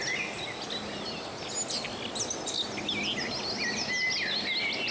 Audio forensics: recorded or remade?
recorded